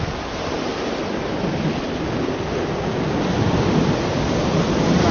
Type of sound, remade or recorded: recorded